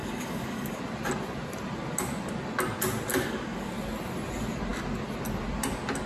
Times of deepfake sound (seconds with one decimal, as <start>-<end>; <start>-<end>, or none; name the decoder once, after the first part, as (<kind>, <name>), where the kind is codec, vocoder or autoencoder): 0.0-0.8 (codec, DAC); 3.1-3.7